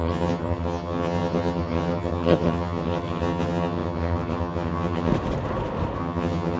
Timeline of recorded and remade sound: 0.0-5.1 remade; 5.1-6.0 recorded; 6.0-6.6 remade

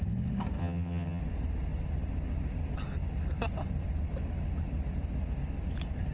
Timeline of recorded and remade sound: 0.0-0.6 recorded; 0.6-1.2 remade; 1.2-6.1 recorded

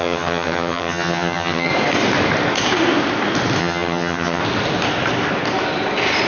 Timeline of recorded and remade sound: 0.0-1.7 remade; 1.7-3.6 recorded; 3.6-4.4 remade; 4.4-6.3 recorded

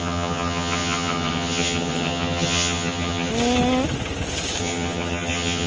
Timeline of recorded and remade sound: 0.0-3.3 remade; 3.3-4.6 recorded; 4.6-5.7 remade

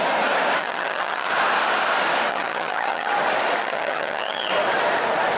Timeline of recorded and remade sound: 0.0-0.6 recorded; 0.6-1.3 remade; 1.3-2.3 recorded; 2.3-3.1 remade; 3.1-3.6 recorded; 3.6-4.5 remade; 4.5-5.4 recorded

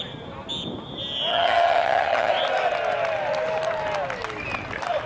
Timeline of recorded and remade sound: 0.0-1.3 recorded; 1.3-2.3 remade; 2.3-5.1 recorded